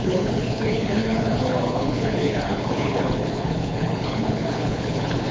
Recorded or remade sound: remade